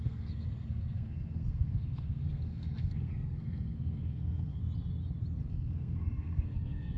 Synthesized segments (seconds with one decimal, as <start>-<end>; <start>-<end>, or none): 0.0-4.6; 5.5-7.0